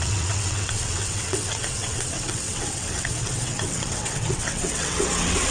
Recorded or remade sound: remade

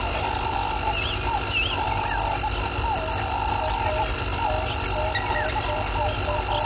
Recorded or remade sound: recorded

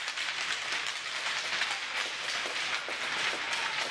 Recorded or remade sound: recorded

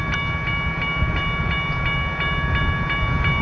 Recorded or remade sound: recorded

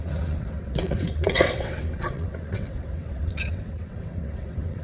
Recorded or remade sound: remade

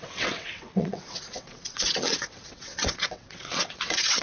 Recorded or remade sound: remade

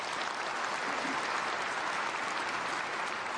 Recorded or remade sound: recorded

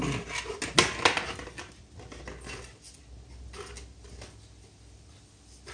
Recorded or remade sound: recorded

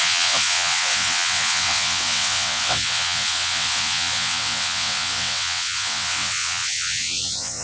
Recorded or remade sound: remade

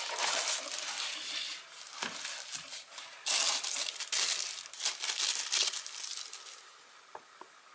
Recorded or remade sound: recorded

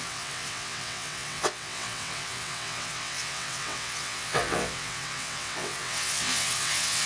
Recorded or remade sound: remade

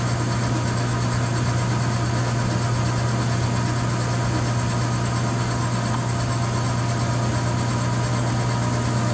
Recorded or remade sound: recorded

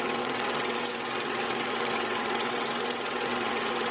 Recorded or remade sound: remade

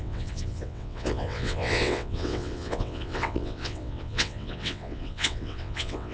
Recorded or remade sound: remade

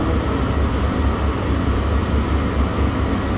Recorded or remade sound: recorded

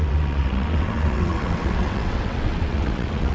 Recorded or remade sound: remade